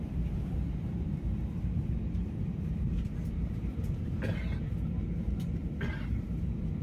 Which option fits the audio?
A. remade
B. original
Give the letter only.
A